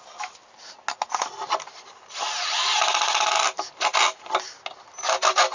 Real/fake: real